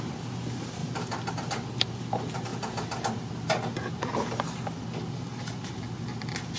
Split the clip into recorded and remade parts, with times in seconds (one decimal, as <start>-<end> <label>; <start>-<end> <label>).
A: 0.0-6.6 recorded

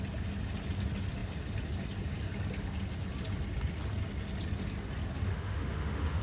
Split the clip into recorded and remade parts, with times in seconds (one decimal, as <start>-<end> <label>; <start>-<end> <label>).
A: 0.0-5.3 recorded; 5.3-6.2 remade

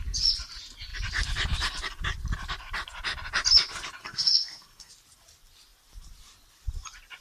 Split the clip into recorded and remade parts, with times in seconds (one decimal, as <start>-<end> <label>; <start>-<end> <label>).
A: 0.0-4.0 recorded; 4.0-4.9 remade; 4.9-7.2 recorded